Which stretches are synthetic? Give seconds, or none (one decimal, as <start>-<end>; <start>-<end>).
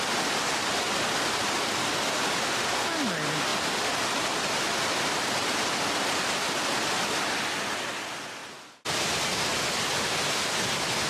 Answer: none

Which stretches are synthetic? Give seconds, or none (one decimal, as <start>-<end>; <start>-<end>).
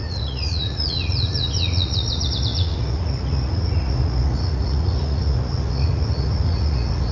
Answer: 0.0-7.1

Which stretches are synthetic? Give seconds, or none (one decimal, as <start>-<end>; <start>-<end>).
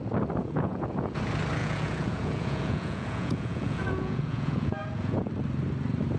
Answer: 0.4-1.2; 1.6-5.3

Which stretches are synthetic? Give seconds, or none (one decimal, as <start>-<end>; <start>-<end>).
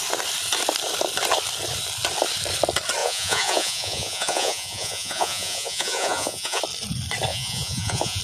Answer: 3.0-6.6; 7.3-8.2